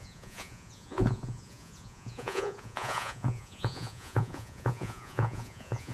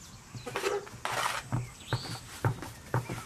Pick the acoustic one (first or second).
second